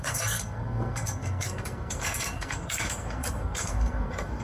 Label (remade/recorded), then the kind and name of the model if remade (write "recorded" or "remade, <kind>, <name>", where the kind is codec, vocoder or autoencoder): remade, codec, SNAC